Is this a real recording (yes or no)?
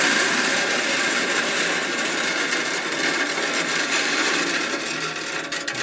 no